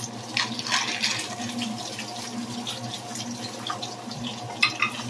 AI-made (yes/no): no